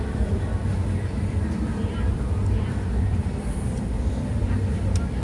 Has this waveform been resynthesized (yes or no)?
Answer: yes